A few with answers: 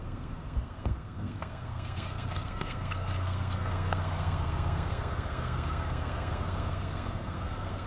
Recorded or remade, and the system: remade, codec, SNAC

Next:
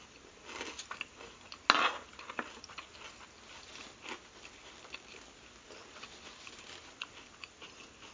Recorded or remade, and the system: recorded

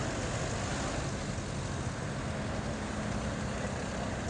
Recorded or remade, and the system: recorded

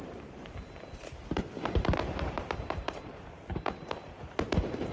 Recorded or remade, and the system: remade, vocoder, BigVGAN v2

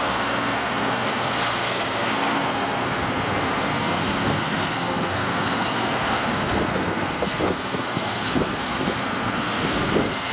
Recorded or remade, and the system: remade, codec, SNAC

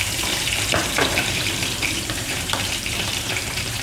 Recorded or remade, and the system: remade, vocoder, BigVGAN v2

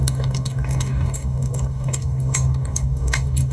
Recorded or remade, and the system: remade, codec, DAC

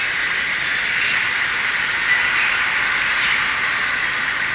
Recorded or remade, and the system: recorded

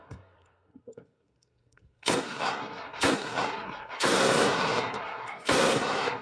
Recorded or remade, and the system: remade, codec, SNAC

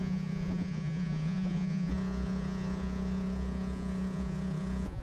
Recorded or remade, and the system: remade, vocoder, Vocos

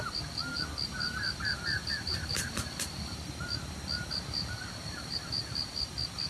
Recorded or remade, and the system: recorded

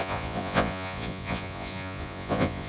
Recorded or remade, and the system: remade, vocoder, Vocos